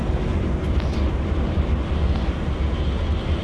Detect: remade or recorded recorded